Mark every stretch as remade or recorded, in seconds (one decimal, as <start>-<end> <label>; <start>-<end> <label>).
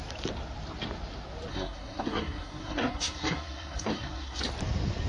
0.0-1.5 recorded; 1.5-4.4 remade; 4.4-5.1 recorded